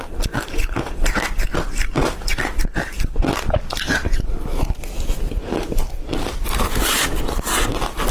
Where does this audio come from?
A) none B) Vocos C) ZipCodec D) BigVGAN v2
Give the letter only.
A